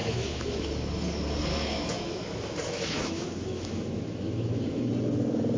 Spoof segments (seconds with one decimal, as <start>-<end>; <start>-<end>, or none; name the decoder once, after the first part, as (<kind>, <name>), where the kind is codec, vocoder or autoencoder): 0.0-0.7 (autoencoder, DAC-VAE); 1.5-4.9